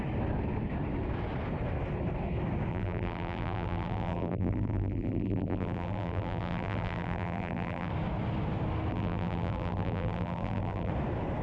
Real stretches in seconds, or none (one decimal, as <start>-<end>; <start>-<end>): 0.0-2.7; 7.9-8.9; 10.9-11.4